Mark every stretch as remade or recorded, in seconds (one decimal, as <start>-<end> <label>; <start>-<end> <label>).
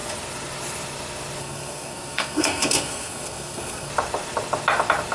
0.0-1.4 recorded; 1.4-3.9 remade; 3.9-5.1 recorded